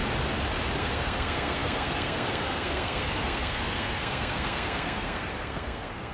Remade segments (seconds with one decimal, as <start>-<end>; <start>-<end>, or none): 0.8-6.1